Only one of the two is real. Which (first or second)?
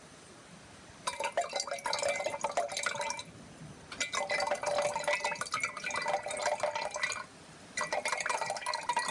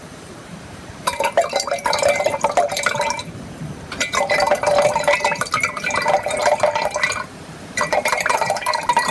first